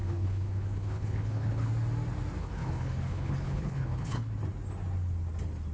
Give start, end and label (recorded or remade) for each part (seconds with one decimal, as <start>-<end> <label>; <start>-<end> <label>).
0.0-1.7 remade; 1.7-2.4 recorded; 2.4-4.3 remade; 4.3-5.7 recorded

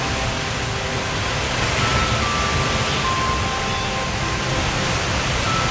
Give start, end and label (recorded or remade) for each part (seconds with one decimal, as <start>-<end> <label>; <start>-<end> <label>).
0.0-5.7 recorded

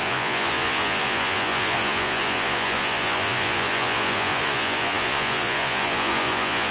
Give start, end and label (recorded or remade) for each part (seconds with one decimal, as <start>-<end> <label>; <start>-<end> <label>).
0.0-6.7 remade

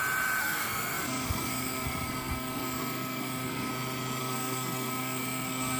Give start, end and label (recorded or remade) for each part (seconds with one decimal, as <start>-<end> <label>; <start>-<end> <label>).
0.0-0.4 recorded; 0.4-3.7 remade; 3.7-4.2 recorded; 4.2-5.8 remade

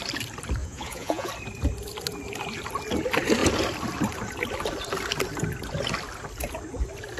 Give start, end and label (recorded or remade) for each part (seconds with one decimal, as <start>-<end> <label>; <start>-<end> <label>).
0.0-0.6 recorded; 0.6-1.3 remade; 1.3-7.2 recorded

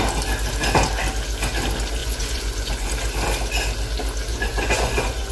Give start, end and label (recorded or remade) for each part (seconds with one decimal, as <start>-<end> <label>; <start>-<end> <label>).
0.0-2.0 recorded; 2.0-2.9 remade; 2.9-4.3 recorded; 4.3-5.3 remade

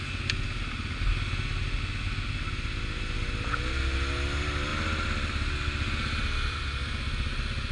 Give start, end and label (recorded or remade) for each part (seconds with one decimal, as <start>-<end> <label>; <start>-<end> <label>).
0.0-7.7 recorded

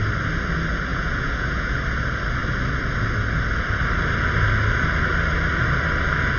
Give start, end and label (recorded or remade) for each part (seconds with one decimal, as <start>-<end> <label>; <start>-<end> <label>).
0.0-0.9 recorded; 0.9-1.8 remade; 1.8-6.4 recorded